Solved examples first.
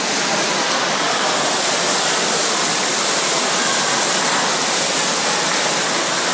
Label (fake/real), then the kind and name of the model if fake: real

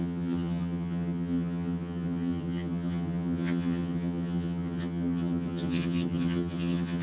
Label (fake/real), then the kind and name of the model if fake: fake, vocoder, HiFi-GAN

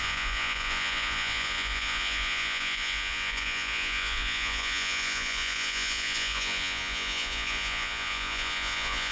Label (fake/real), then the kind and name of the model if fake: fake, vocoder, Vocos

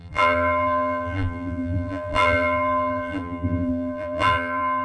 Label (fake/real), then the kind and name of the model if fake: fake, vocoder, BigVGAN v2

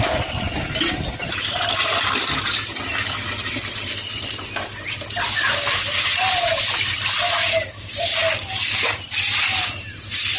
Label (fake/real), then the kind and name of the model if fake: real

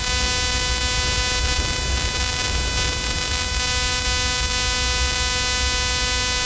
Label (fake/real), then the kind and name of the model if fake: real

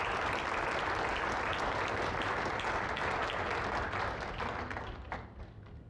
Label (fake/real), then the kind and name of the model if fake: real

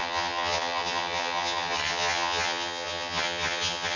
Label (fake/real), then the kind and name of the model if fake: fake, vocoder, HiFi-GAN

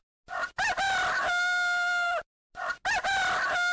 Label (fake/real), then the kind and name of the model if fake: real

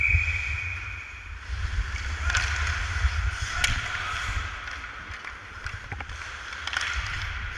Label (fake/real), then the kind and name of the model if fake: real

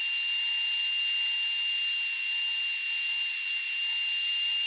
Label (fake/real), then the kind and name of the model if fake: real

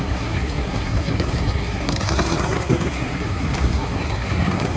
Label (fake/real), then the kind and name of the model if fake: fake, codec, SNAC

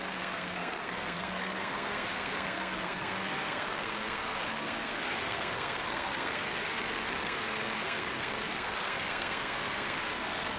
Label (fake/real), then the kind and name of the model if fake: fake, codec, SNAC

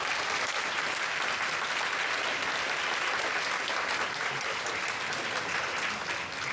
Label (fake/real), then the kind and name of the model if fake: real